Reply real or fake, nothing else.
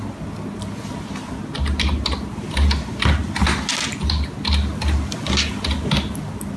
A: real